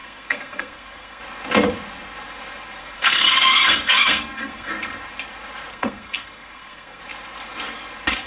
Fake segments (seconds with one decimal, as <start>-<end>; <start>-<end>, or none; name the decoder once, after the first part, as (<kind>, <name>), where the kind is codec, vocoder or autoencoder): 0.0-1.2 (codec, SNAC); 2.8-4.7; 5.7-7.0